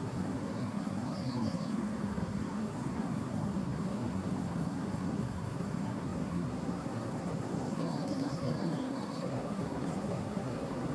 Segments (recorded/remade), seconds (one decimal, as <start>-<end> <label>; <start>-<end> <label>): 0.0-10.9 remade